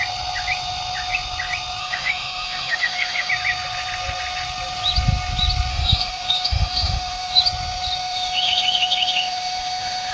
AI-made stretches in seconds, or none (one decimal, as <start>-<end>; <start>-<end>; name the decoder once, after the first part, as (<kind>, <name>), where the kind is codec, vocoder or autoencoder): 1.8-3.3 (autoencoder, DAC-VAE); 5.7-7.4; 8.0-10.1

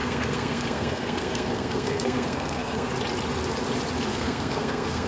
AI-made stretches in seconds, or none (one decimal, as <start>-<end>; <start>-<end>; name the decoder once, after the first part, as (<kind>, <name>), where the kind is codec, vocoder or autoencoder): 0.0-2.9 (codec, SNAC); 4.1-5.1

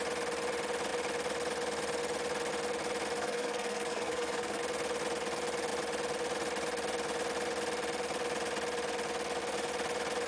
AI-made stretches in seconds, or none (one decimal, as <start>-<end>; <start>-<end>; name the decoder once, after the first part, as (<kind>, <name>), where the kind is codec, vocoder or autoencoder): 3.2-4.6 (codec, SNAC)

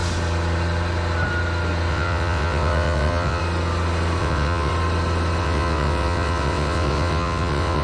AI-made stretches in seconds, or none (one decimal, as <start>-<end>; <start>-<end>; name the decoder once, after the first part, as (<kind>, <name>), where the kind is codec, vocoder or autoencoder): 1.9-3.4 (vocoder, WaveNeXt); 4.2-4.7; 5.4-7.8

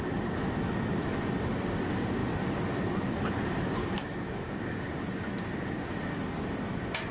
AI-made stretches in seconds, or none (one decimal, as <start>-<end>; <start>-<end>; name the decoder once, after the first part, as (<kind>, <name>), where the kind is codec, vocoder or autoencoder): 3.8-4.9 (codec, DAC)

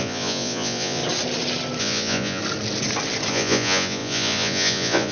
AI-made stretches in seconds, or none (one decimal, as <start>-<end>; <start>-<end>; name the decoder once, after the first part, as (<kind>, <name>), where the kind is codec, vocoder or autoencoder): 0.0-1.0 (vocoder, Vocos); 1.8-2.4; 3.3-5.1